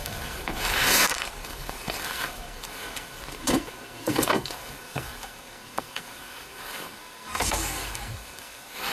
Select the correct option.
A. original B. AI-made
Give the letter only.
B